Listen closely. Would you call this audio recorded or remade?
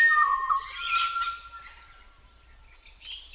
recorded